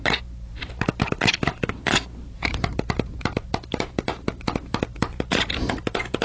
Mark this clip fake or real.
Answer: fake